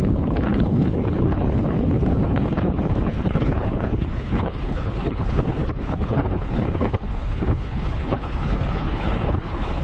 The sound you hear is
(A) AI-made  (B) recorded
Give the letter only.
A